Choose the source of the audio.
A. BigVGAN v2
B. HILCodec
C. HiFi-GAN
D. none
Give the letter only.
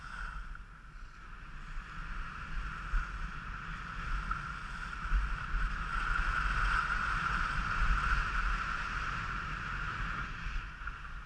D